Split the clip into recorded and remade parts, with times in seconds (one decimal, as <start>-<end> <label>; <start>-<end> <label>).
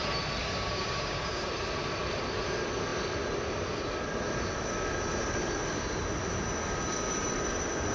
0.0-0.4 recorded; 0.4-1.5 remade; 1.5-7.9 recorded